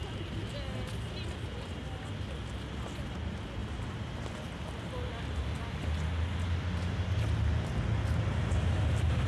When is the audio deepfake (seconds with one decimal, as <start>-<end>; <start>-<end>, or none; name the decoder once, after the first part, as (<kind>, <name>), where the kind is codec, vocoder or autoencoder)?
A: none